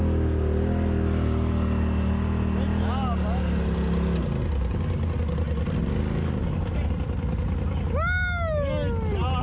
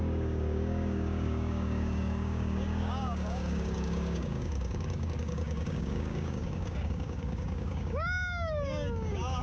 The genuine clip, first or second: first